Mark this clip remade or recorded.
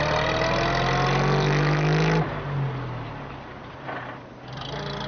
recorded